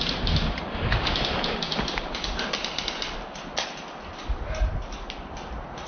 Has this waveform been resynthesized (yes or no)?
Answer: no